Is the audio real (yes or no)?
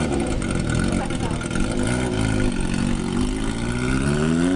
yes